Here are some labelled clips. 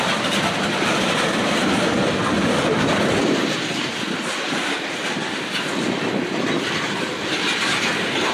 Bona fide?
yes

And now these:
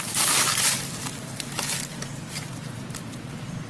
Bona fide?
yes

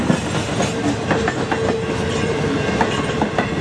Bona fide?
yes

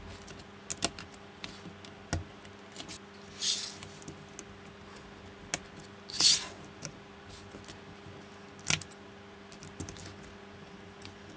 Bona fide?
yes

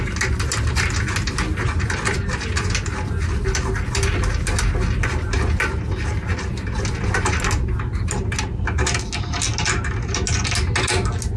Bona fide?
yes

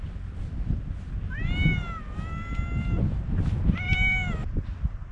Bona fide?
yes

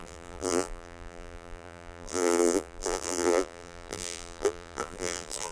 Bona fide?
no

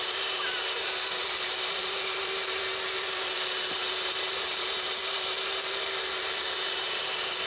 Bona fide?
no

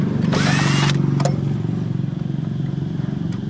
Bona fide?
yes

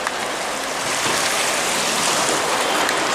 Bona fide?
yes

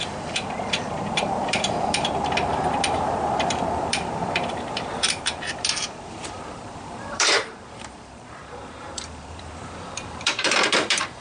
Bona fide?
no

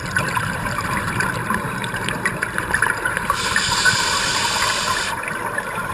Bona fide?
no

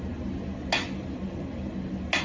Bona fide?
yes